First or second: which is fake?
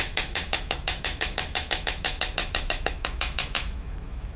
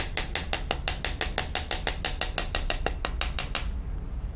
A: first